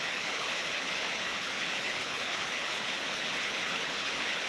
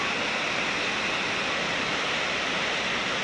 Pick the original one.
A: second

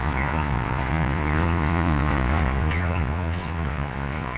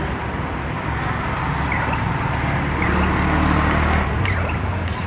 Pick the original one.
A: second